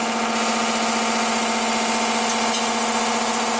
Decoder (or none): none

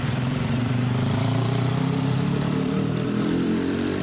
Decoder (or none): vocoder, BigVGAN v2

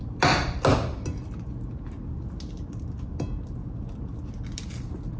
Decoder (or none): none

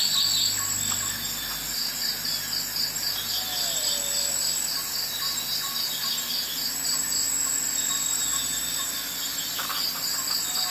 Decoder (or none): none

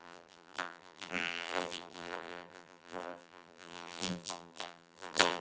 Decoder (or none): vocoder, BigVGAN v2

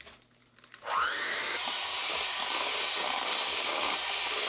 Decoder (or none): vocoder, BigVGAN v2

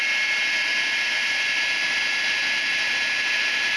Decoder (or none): none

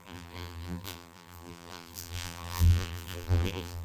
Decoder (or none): vocoder, BigVGAN v2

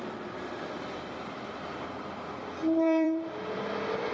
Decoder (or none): vocoder, BigVGAN v2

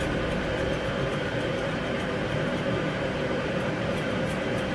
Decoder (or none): vocoder, BigVGAN v2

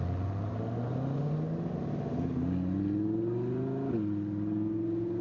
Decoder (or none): none